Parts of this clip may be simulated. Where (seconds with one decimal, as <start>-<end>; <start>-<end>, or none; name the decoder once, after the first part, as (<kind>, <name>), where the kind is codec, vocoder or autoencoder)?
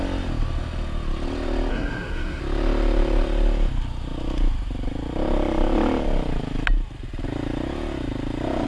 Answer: 1.7-2.4 (codec, SNAC)